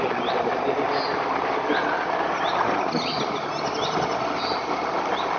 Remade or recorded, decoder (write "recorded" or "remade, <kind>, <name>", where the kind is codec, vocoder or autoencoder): recorded